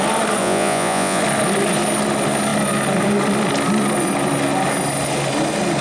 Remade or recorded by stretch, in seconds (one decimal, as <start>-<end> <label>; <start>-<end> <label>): 0.0-0.4 recorded; 0.4-1.2 remade; 1.2-5.8 recorded